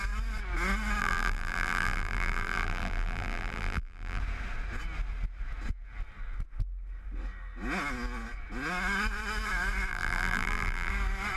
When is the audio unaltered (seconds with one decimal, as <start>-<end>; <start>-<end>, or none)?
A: 0.0-1.0; 4.2-9.9; 10.9-11.4